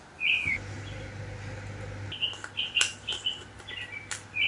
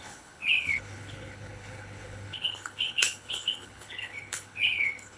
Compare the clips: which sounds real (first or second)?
first